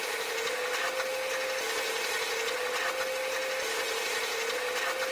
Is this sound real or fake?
real